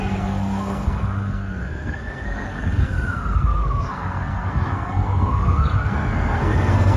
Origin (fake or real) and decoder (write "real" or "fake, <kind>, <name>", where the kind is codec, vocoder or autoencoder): fake, codec, SNAC